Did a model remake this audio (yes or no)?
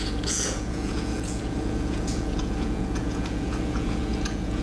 yes